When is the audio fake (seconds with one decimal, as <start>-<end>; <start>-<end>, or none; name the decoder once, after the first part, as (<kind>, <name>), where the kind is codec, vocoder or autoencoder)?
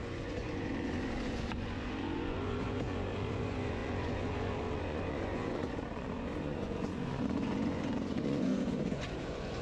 0.0-9.6 (vocoder, Vocos)